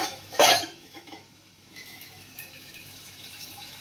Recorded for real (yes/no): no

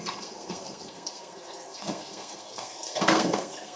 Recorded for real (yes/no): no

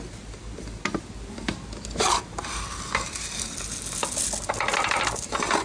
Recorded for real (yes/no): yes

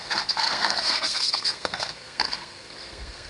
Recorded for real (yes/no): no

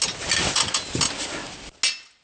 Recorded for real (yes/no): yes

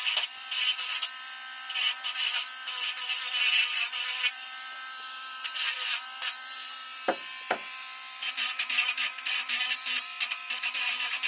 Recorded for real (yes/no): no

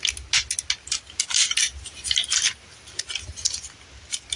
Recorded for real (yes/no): yes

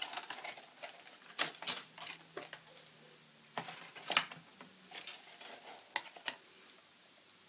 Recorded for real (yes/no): yes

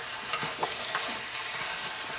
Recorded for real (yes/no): yes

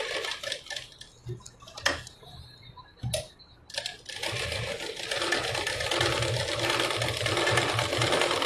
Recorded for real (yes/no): yes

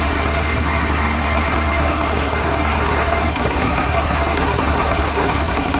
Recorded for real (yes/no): no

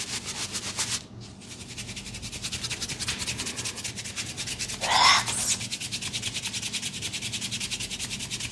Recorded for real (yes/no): yes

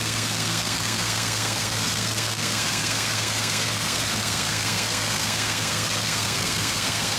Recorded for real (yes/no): no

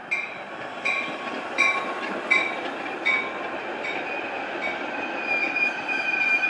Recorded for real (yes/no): yes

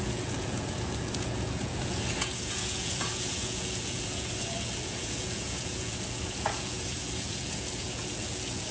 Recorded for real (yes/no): no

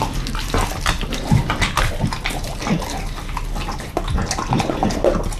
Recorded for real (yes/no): yes